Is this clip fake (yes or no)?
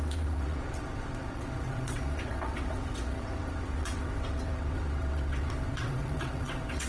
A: yes